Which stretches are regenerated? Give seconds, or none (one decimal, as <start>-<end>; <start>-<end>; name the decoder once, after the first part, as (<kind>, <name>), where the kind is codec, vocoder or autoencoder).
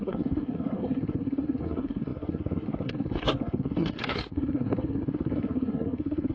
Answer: 0.0-6.3 (codec, SNAC)